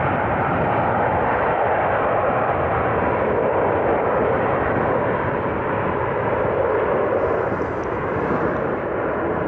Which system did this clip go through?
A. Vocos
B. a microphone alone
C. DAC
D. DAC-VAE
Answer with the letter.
B